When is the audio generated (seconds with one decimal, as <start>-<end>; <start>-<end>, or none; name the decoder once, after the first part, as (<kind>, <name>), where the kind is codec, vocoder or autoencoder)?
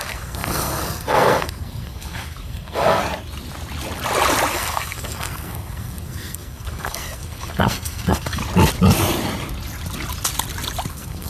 0.0-3.0 (codec, SNAC); 4.5-8.4; 10.9-11.3